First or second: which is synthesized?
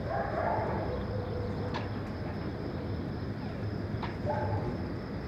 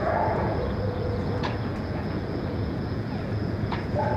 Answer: second